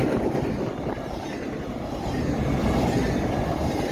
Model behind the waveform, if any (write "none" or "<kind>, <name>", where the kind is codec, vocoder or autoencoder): none